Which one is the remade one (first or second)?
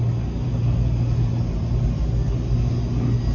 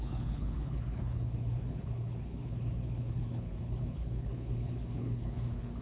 second